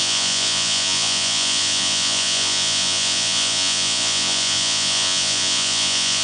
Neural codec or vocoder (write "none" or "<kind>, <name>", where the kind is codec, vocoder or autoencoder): vocoder, Vocos